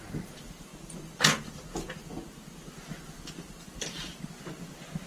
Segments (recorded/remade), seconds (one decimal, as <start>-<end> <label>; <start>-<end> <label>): 0.0-0.7 remade; 0.7-3.6 recorded; 3.6-4.1 remade; 4.1-5.1 recorded